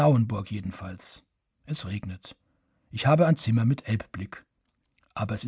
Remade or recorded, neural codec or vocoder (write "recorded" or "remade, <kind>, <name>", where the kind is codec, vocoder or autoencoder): recorded